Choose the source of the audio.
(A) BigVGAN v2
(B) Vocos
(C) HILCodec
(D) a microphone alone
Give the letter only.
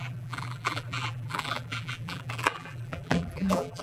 A